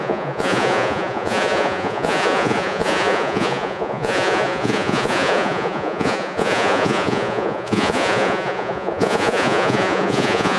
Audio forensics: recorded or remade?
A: remade